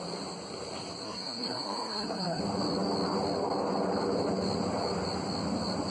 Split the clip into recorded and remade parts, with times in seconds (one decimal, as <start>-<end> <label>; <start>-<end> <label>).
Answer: 0.0-1.0 recorded; 1.0-2.4 remade; 2.4-5.9 recorded